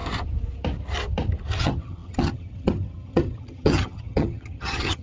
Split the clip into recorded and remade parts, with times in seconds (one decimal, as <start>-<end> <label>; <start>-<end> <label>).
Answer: 0.0-1.6 recorded; 1.6-5.0 remade